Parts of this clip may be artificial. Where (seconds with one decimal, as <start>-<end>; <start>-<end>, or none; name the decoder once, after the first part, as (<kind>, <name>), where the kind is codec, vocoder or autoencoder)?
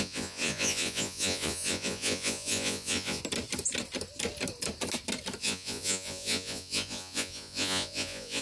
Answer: 0.0-3.2 (vocoder, Vocos); 5.4-8.4